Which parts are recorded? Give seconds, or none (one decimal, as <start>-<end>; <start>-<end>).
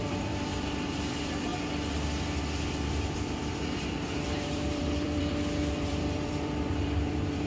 1.5-2.9